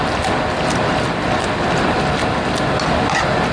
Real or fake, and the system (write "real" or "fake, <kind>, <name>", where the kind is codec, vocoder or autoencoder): real